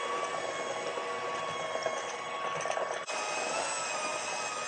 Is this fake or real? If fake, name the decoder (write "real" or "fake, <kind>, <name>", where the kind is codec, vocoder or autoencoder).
real